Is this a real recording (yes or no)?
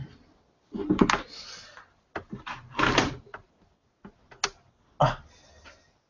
yes